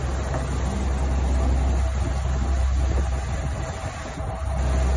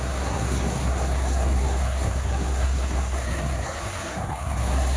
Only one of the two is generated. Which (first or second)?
second